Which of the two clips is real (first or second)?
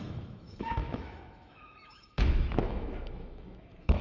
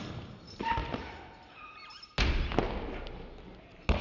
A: second